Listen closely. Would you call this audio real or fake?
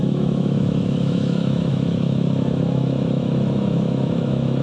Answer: fake